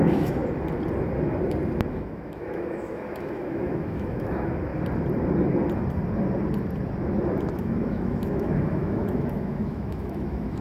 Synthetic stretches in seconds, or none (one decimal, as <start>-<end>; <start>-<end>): 0.0-0.4; 1.9-4.7; 7.5-10.6

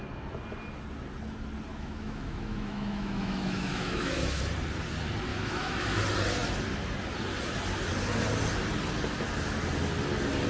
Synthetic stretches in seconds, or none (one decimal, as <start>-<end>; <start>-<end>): 1.7-4.4; 5.3-6.0

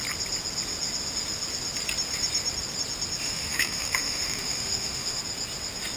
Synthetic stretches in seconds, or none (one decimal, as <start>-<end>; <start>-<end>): 3.2-5.2

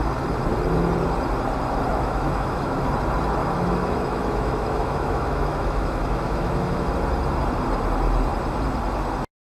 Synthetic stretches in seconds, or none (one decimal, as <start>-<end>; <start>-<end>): 1.9-2.9; 3.4-6.9